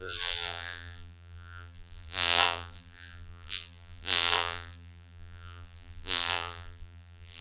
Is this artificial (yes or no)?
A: yes